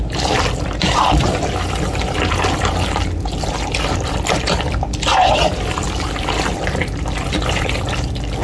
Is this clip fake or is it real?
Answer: fake